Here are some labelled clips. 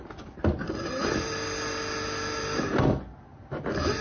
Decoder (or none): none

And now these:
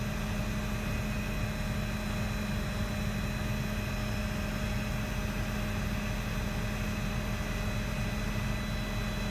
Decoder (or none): none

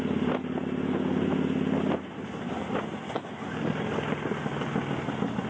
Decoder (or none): none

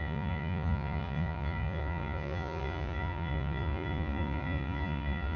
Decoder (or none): vocoder, Vocos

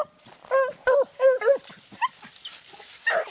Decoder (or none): none